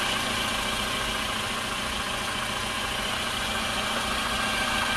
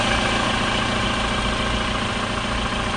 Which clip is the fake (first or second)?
first